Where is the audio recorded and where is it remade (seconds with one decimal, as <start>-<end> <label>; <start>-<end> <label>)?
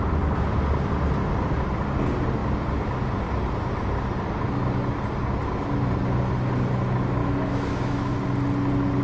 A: 0.0-7.2 recorded; 7.2-8.2 remade; 8.2-9.0 recorded